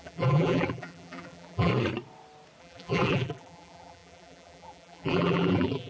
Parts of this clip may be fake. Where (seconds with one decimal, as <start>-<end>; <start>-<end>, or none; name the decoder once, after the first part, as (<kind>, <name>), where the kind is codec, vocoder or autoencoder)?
0.0-1.7 (vocoder, BigVGAN v2); 2.6-5.9